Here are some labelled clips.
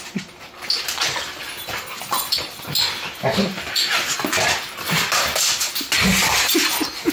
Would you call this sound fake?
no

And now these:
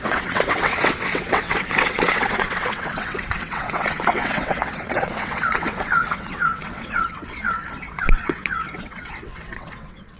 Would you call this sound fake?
yes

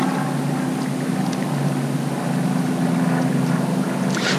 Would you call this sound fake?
no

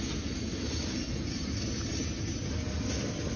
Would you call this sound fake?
no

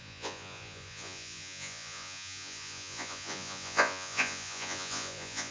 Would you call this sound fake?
yes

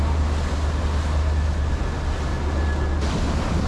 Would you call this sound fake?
no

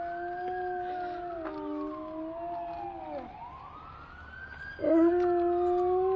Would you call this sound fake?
no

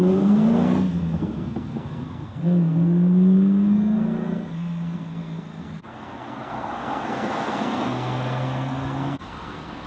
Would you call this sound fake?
yes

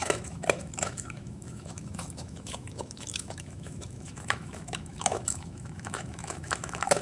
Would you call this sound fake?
yes